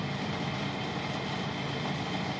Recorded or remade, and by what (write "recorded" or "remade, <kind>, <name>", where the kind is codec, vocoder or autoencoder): recorded